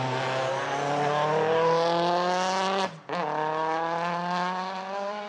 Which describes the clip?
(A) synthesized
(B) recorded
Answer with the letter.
B